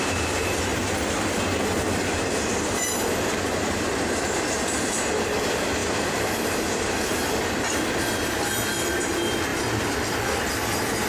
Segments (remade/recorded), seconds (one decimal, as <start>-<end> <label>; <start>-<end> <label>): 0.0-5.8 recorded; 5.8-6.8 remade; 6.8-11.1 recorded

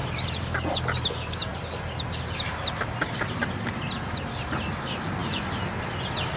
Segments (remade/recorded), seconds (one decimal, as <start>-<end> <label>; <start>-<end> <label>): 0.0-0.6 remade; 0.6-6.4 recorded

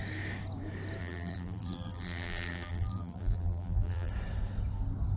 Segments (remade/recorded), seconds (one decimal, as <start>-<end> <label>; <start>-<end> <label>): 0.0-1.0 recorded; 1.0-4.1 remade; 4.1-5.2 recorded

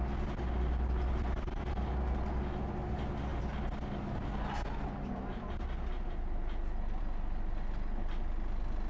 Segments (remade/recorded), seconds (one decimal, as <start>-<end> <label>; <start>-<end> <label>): 0.0-8.9 recorded

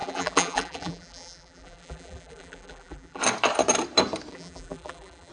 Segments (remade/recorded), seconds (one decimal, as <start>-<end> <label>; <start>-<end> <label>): 0.0-3.2 remade; 3.2-4.3 recorded; 4.3-5.3 remade

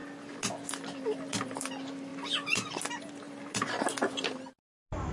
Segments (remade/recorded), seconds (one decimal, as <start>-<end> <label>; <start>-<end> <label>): 0.0-5.1 recorded

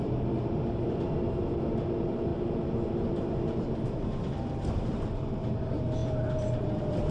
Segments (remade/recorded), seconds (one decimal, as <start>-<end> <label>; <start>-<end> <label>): 0.0-7.1 remade